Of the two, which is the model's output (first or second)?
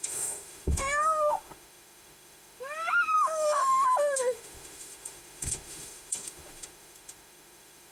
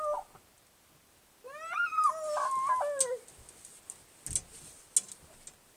first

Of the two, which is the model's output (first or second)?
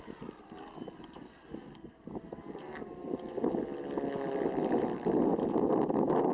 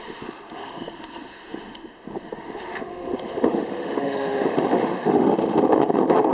second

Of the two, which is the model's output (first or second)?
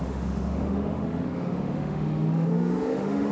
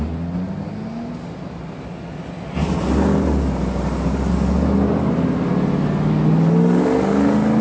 first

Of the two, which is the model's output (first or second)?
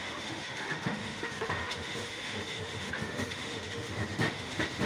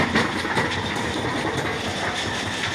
first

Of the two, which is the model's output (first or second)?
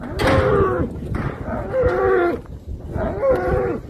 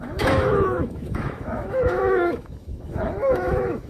second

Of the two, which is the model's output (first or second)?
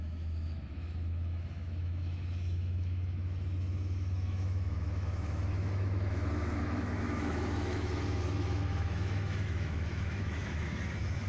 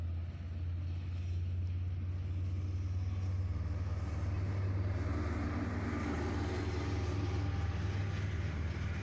first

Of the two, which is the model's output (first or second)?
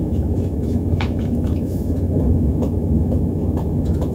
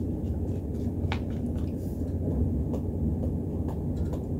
first